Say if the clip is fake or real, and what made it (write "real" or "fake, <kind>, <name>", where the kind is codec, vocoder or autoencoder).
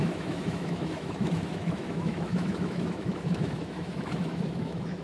fake, autoencoder, DAC-VAE